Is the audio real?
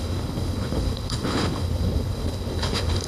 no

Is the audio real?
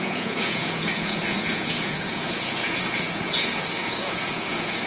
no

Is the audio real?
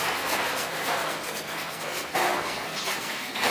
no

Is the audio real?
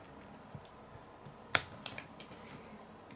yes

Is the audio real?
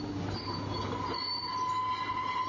yes